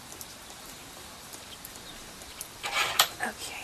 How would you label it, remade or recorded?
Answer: remade